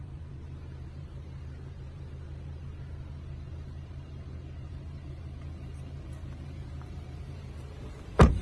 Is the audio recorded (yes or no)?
no